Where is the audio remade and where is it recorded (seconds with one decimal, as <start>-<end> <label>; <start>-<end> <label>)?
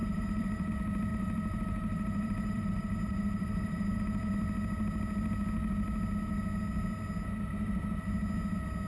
0.0-0.7 remade; 0.7-1.1 recorded; 1.1-4.3 remade; 4.3-8.9 recorded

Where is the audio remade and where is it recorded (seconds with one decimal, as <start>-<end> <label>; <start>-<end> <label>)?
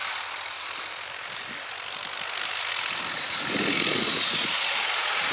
0.0-3.1 recorded; 3.1-5.3 remade